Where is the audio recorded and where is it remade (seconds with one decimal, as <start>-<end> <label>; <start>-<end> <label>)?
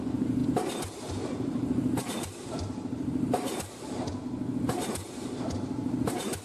0.0-0.4 recorded; 0.4-4.2 remade; 4.2-6.4 recorded